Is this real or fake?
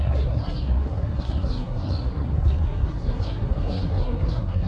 fake